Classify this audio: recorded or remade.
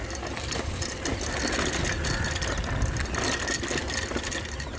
recorded